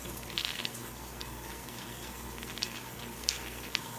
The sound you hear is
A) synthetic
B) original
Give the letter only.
A